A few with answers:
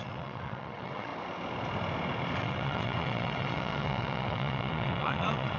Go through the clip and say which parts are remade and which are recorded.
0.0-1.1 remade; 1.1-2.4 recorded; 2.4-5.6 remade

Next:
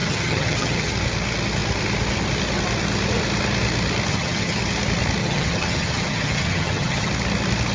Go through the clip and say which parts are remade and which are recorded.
0.0-0.9 remade; 0.9-4.1 recorded; 4.1-4.6 remade; 4.6-5.2 recorded; 5.2-7.1 remade; 7.1-7.7 recorded

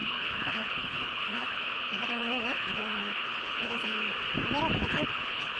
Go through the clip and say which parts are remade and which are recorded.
0.0-4.1 remade; 4.1-4.7 recorded; 4.7-5.6 remade

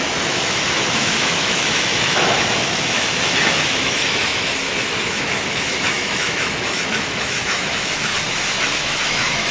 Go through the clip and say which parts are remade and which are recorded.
0.0-9.5 remade

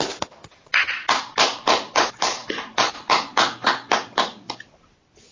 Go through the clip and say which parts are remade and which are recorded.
0.0-0.7 remade; 0.7-1.2 recorded; 1.2-2.4 remade; 2.4-4.1 recorded; 4.1-5.3 remade

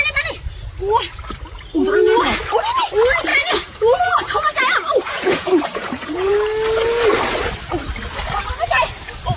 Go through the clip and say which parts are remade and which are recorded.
0.0-1.8 recorded; 1.8-2.4 remade; 2.4-3.3 recorded; 3.3-6.3 remade; 6.3-9.4 recorded